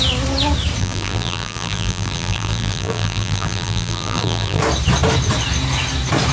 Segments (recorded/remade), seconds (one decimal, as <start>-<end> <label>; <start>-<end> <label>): 0.0-0.8 recorded; 0.8-4.6 remade; 4.6-6.3 recorded